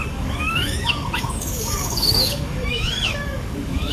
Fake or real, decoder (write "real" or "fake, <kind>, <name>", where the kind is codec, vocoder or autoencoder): fake, codec, DAC